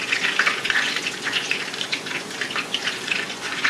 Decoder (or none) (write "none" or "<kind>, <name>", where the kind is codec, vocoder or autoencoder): vocoder, Vocos